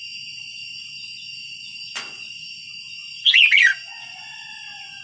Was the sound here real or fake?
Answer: fake